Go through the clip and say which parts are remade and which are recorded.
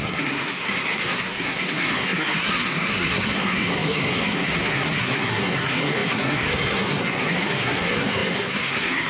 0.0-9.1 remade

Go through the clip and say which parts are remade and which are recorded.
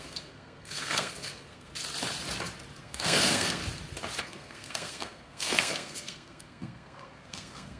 0.0-1.7 remade; 1.7-2.8 recorded; 2.8-3.6 remade; 3.6-4.2 recorded; 4.2-7.8 remade